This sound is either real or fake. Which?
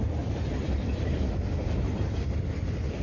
fake